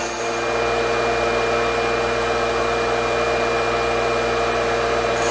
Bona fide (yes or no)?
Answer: yes